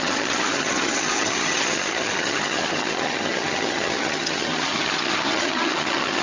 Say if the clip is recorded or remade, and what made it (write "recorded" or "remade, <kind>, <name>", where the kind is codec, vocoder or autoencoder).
remade, vocoder, HiFi-GAN